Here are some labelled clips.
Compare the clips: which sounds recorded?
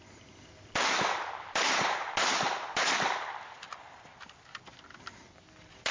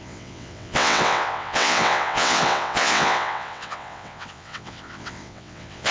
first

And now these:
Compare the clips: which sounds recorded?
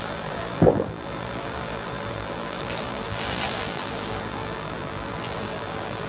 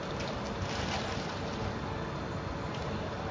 second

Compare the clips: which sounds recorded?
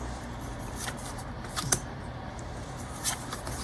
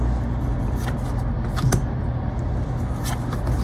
second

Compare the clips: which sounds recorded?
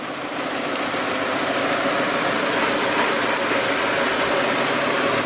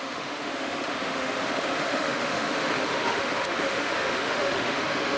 first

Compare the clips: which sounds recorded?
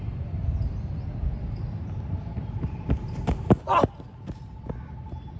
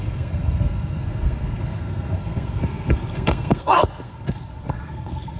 first